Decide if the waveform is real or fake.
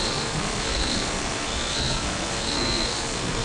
fake